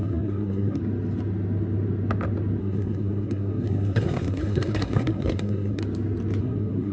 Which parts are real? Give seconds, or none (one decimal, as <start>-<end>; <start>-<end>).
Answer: 0.8-2.6; 5.8-6.4